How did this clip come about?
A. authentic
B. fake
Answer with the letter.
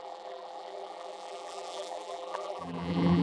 B